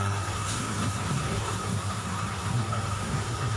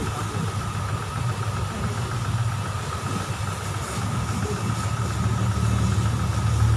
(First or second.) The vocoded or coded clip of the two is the first